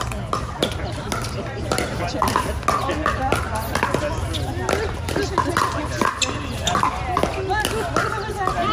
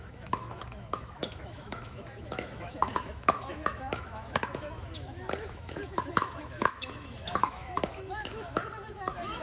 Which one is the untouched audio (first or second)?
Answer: first